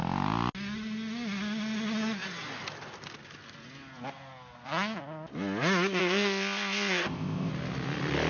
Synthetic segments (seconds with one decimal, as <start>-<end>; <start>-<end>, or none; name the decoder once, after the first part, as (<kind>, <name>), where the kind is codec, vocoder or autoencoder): 6.0-7.5 (codec, ZipCodec)